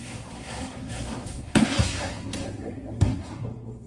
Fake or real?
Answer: fake